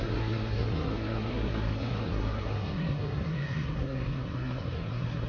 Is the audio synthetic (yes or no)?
yes